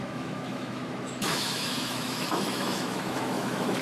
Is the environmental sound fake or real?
fake